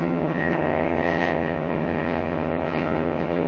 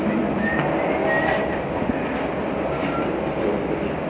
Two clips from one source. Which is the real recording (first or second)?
second